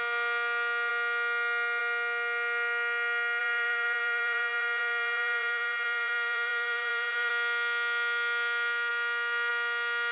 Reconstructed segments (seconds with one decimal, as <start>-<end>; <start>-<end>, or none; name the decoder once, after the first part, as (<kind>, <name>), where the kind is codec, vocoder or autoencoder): 3.4-7.3 (vocoder, BigVGAN v2)